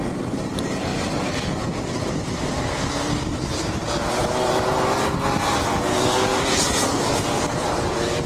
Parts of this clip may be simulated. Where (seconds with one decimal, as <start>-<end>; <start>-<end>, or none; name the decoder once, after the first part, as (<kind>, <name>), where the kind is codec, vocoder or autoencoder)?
0.9-4.5 (vocoder, BigVGAN v2); 6.3-7.4